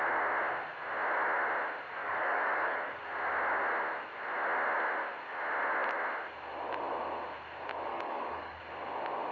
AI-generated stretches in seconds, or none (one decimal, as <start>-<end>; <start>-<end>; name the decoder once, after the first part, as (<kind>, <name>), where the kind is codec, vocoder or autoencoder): 2.0-3.0 (codec, DAC); 7.9-8.6